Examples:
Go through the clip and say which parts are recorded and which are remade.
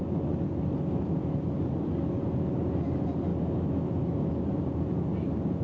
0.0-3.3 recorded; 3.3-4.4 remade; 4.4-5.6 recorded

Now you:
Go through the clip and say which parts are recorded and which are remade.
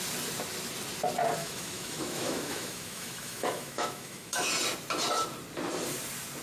0.0-1.4 recorded; 1.4-4.5 remade; 4.5-6.4 recorded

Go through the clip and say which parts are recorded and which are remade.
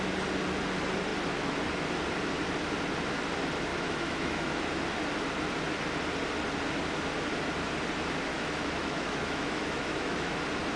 0.0-3.7 recorded; 3.7-4.6 remade; 4.6-8.3 recorded; 8.3-10.4 remade; 10.4-10.8 recorded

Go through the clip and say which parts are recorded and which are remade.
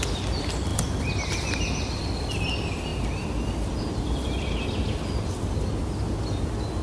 0.0-6.8 recorded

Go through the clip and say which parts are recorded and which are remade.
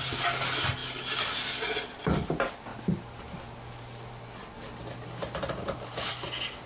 0.0-6.7 recorded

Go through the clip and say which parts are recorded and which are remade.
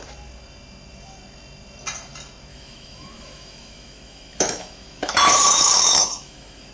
0.0-2.5 recorded; 2.5-6.7 remade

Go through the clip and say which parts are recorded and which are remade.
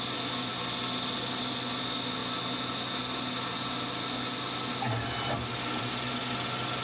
0.0-6.8 recorded